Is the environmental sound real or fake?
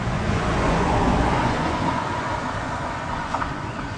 fake